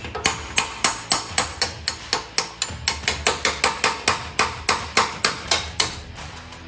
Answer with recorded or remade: recorded